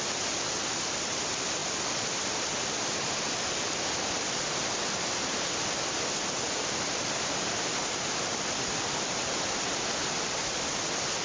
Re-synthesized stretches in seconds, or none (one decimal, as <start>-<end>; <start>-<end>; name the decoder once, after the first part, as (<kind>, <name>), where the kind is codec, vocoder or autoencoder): none